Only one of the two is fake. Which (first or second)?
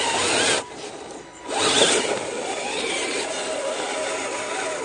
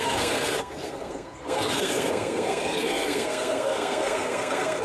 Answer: second